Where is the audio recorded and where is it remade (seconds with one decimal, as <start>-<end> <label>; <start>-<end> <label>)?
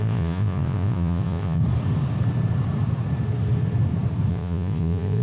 0.0-1.6 remade; 1.6-4.3 recorded; 4.3-5.2 remade